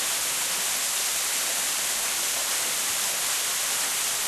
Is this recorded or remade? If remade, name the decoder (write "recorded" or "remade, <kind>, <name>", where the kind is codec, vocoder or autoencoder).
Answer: recorded